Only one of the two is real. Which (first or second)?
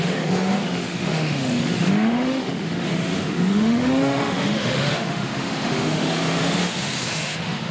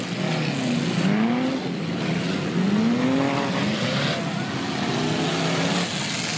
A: second